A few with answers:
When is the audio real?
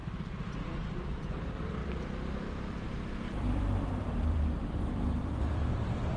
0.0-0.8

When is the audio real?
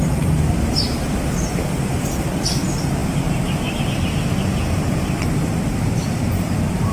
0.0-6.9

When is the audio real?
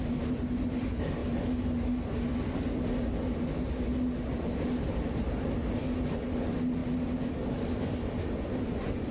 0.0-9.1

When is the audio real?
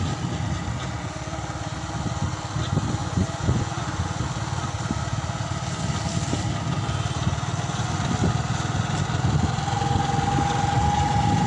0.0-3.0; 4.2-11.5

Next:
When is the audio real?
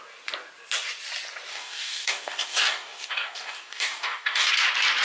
0.0-1.5; 4.5-5.0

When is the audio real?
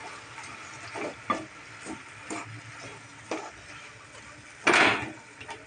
0.0-5.7